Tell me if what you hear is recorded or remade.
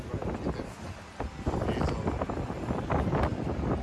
recorded